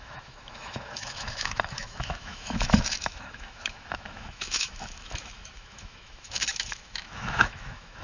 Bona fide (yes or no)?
no